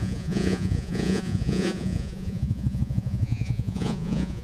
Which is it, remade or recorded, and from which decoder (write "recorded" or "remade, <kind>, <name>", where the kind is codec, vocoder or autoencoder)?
remade, vocoder, Vocos